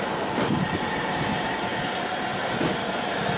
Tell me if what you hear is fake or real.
real